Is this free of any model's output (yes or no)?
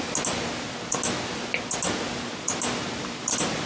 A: yes